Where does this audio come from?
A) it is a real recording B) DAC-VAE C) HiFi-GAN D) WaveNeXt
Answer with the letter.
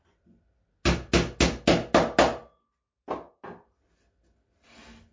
A